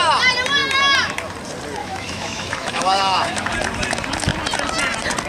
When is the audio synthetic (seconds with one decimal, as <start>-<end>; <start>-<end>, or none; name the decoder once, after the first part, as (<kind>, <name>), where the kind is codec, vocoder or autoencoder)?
1.8-3.5 (autoencoder, DAC-VAE)